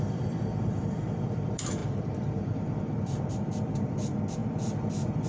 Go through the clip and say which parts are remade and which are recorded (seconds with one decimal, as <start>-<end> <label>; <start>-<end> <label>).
0.0-5.3 remade